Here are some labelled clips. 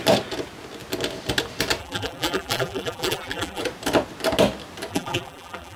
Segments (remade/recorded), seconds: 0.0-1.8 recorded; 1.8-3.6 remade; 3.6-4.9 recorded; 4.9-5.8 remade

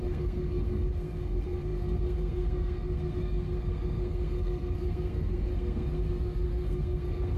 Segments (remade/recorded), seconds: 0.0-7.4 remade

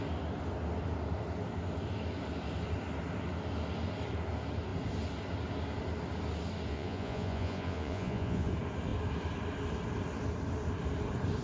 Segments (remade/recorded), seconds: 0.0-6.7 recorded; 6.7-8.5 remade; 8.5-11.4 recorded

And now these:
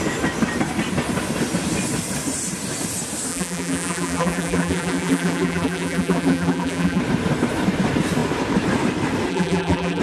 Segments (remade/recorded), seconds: 0.0-3.3 recorded; 3.3-7.0 remade; 7.0-9.3 recorded; 9.3-10.0 remade

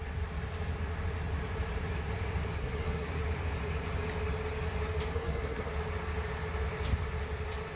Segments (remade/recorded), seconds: 0.0-2.6 recorded; 2.6-3.1 remade; 3.1-5.1 recorded; 5.1-5.7 remade; 5.7-7.8 recorded